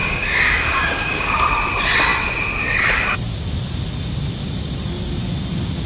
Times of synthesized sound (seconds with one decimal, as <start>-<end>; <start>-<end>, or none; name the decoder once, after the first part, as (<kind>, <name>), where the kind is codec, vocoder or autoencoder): 0.0-1.4 (codec, DAC)